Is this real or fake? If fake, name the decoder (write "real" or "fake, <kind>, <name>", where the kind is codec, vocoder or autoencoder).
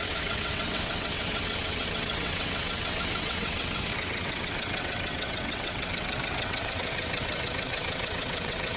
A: fake, vocoder, WaveNeXt